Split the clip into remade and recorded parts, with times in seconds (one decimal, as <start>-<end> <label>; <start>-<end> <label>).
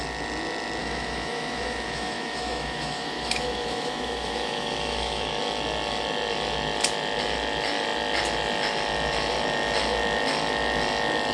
0.0-0.8 recorded; 0.8-5.4 remade; 5.4-11.3 recorded